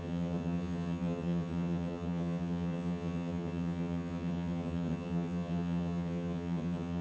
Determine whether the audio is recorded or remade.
remade